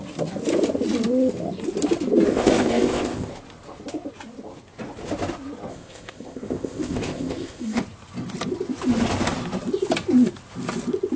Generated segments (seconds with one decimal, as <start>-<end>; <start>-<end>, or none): 2.3-3.3; 5.7-7.8